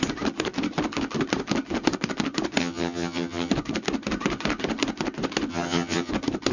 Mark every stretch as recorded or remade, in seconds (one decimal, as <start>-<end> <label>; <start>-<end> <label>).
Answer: 0.0-2.6 recorded; 2.6-3.5 remade; 3.5-5.5 recorded; 5.5-6.1 remade; 6.1-6.5 recorded